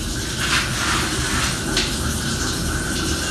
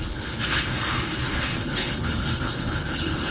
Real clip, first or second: first